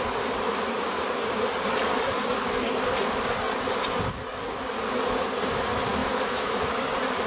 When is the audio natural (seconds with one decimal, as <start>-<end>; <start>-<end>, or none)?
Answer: 0.0-6.0; 6.6-7.3